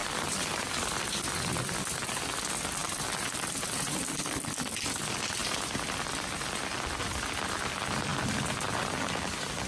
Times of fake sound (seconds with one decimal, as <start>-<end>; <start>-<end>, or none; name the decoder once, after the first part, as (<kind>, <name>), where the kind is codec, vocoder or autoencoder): 0.0-1.6 (vocoder, BigVGAN v2); 2.8-4.6; 5.4-6.6; 8.1-9.0

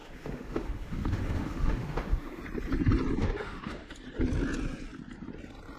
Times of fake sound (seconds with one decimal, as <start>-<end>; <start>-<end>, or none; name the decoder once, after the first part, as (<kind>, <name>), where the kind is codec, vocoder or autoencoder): 0.0-2.4 (autoencoder, DAC-VAE); 3.2-3.9

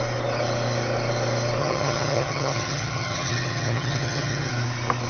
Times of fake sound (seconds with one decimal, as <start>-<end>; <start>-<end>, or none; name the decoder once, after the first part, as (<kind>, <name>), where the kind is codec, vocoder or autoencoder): 1.6-4.5 (vocoder, HiFi-GAN)

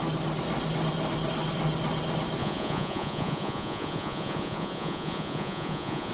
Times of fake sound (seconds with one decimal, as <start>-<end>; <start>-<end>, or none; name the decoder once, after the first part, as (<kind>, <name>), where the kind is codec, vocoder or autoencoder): 2.4-6.1 (vocoder, Vocos)

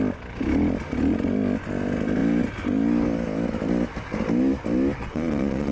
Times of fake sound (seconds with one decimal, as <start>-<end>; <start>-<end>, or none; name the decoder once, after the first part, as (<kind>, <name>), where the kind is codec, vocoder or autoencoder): 5.0-5.7 (vocoder, Vocos)

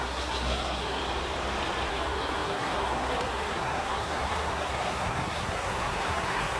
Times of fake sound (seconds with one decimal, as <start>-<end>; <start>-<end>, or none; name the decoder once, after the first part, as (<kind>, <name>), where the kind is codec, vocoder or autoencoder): 0.0-1.0 (codec, SNAC); 1.9-6.6

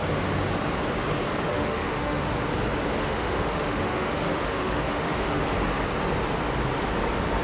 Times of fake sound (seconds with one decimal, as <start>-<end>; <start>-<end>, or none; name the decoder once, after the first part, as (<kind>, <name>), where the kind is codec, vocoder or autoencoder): 1.5-2.3 (autoencoder, DAC-VAE); 3.0-5.4